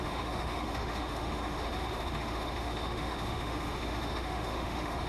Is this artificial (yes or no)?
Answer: yes